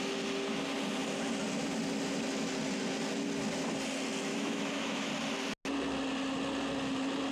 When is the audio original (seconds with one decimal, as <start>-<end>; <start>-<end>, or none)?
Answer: 0.0-4.3; 5.1-7.3